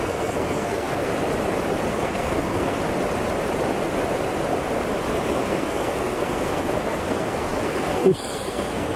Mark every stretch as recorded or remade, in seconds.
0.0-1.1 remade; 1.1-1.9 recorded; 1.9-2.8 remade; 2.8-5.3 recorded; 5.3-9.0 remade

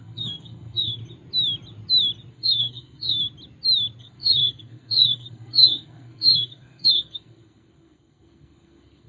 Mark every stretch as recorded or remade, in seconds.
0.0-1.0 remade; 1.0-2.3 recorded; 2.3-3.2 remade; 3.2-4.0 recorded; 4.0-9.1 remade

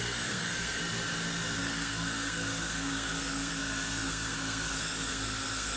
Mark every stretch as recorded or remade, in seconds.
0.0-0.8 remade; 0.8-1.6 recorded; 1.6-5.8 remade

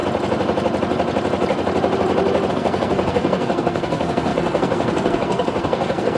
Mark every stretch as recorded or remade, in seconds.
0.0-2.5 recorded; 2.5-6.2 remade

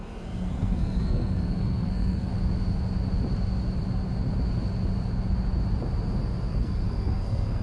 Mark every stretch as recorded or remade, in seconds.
0.0-2.3 remade; 2.3-6.5 recorded; 6.5-7.6 remade